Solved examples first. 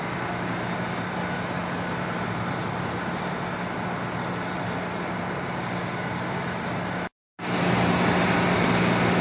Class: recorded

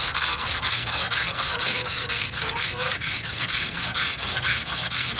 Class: remade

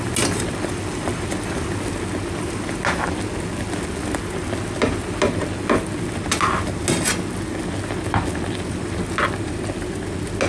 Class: recorded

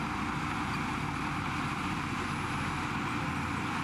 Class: recorded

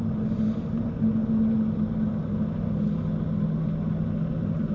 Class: recorded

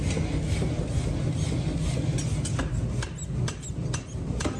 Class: recorded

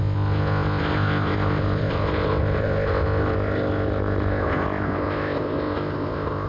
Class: remade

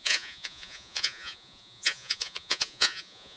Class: remade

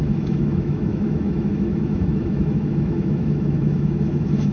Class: remade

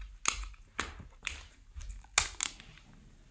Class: recorded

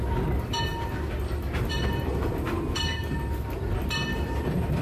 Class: recorded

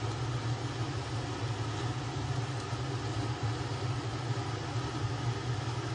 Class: recorded